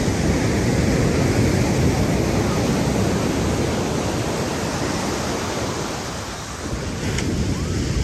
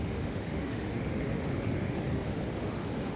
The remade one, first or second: second